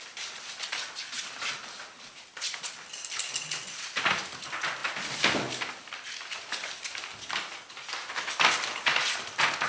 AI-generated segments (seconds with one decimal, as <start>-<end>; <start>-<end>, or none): none